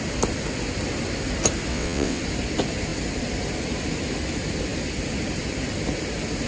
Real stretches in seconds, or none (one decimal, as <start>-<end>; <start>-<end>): 0.0-1.7; 2.2-6.5